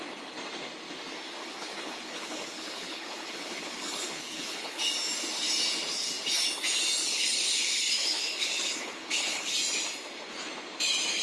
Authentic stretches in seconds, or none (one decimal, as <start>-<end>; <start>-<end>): 0.0-1.4; 4.8-7.0; 9.5-11.2